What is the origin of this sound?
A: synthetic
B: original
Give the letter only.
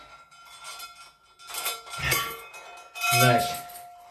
B